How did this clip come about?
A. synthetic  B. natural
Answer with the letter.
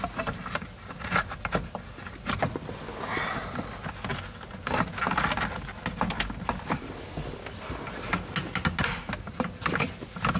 B